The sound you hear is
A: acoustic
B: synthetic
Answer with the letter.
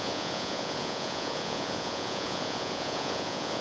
B